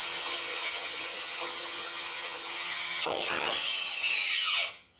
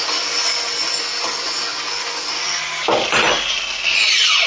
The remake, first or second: first